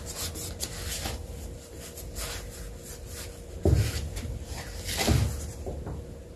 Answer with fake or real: real